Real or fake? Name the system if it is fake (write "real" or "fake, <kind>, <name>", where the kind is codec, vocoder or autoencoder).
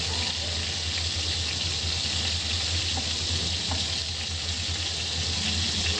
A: real